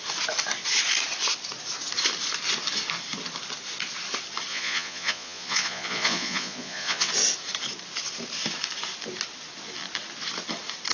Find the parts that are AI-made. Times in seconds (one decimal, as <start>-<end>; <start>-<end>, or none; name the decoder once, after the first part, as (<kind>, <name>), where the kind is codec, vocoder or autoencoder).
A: 4.5-7.1 (vocoder, Vocos)